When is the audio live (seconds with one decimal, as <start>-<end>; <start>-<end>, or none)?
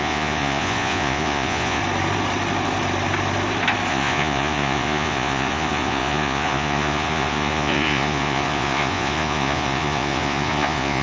1.8-3.9